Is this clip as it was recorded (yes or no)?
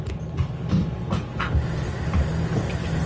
yes